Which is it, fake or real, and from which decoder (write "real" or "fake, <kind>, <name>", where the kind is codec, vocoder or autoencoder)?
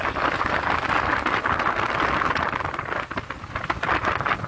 real